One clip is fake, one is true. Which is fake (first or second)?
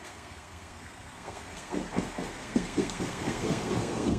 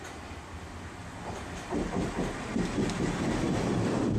first